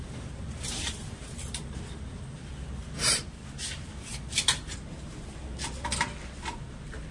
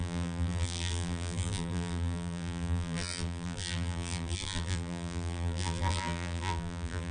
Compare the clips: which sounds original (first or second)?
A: first